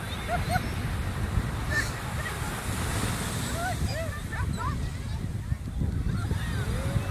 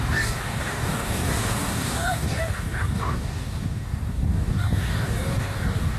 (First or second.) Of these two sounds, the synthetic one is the second